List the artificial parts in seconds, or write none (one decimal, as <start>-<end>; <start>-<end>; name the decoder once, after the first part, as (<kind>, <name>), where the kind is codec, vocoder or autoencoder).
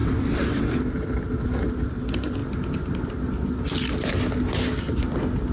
0.0-0.7 (vocoder, WaveNeXt)